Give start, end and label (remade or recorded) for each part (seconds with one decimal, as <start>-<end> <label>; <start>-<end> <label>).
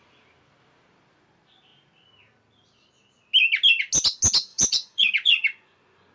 0.0-4.5 recorded; 4.5-6.1 remade